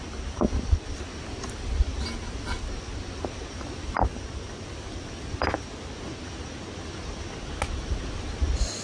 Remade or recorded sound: recorded